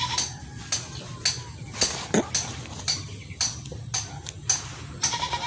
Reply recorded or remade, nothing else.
recorded